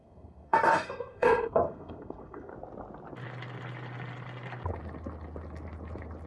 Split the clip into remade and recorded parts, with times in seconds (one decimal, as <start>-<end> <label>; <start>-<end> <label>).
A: 0.0-2.5 remade; 2.5-6.3 recorded